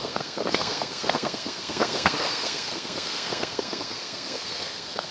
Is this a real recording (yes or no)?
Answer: no